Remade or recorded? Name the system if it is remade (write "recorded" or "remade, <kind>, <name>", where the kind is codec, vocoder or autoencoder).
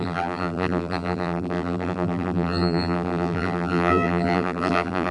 remade, vocoder, BigVGAN v2